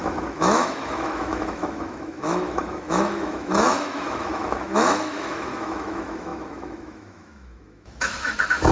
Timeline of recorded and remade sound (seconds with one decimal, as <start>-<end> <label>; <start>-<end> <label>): 0.0-8.7 remade